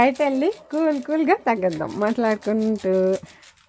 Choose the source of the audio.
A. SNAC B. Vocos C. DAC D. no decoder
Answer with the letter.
D